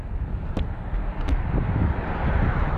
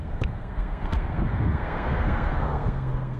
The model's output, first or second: second